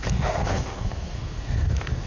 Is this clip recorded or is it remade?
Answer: remade